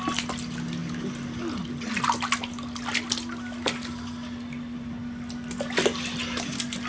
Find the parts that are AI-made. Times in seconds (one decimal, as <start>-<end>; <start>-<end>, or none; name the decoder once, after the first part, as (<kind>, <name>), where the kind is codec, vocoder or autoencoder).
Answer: none